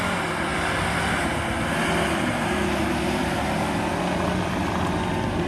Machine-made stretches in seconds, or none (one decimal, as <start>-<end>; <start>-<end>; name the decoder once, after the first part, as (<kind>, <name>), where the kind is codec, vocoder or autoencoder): none